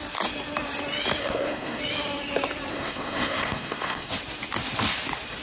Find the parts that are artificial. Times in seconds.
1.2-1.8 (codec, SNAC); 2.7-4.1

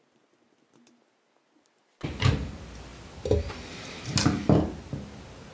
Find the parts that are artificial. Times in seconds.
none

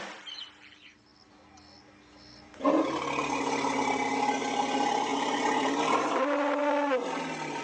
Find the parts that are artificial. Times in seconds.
none